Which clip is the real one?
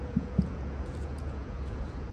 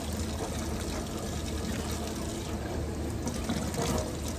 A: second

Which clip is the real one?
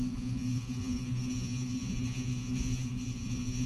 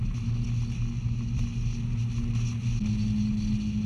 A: second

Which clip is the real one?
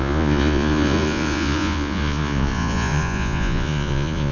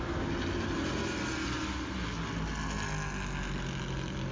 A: second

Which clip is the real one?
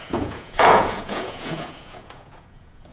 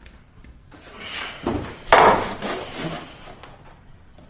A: second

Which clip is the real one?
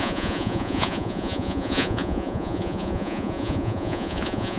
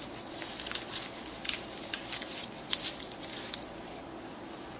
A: second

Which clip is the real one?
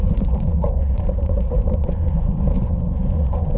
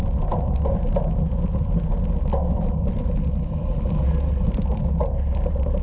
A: second